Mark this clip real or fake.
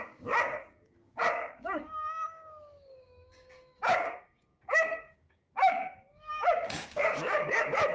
fake